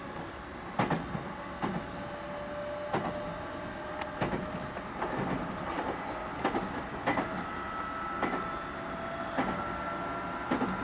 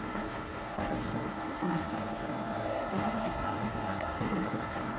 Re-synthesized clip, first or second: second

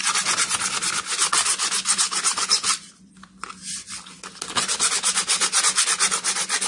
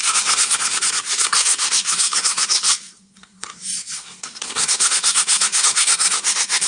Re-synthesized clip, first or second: second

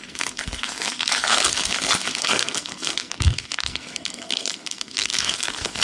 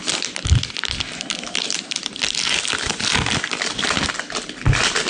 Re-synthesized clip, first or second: first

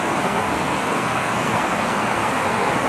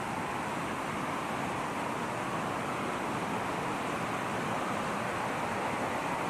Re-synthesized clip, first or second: first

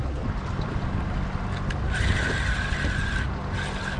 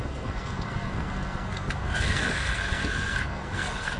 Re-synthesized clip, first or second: second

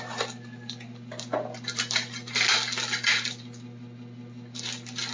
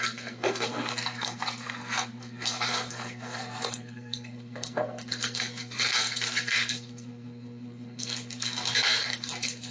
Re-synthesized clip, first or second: second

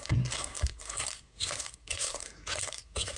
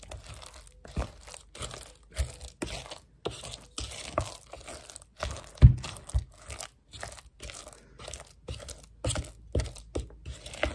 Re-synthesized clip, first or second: first